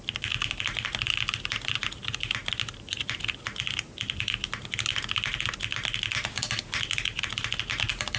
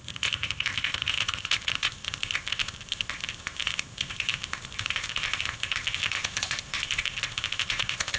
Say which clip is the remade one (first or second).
second